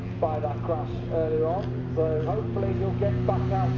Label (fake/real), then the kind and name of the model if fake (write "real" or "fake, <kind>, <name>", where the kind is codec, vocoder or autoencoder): real